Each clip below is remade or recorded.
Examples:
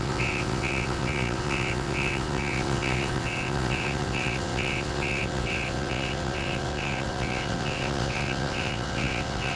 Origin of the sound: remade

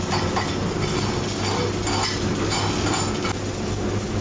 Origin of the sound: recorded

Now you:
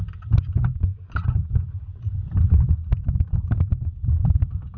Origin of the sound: recorded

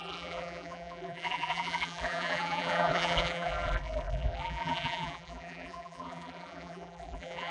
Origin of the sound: remade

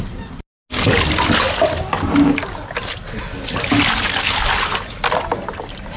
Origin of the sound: recorded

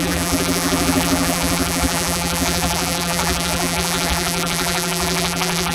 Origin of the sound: remade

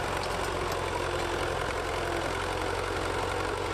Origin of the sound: recorded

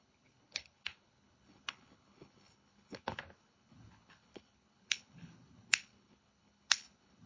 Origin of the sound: remade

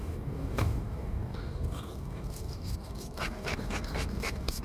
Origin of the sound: remade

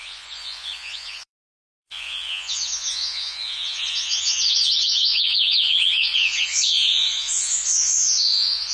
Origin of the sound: remade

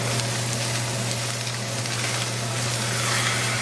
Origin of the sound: recorded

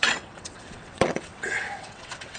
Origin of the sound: remade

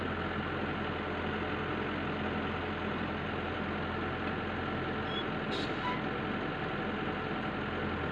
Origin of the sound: recorded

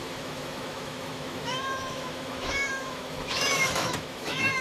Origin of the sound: remade